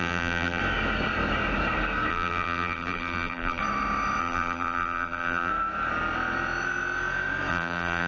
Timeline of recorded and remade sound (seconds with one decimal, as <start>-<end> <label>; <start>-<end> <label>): 0.0-0.6 remade; 0.6-2.1 recorded; 2.1-3.6 remade; 3.6-4.2 recorded; 4.2-5.5 remade; 5.5-7.5 recorded; 7.5-8.1 remade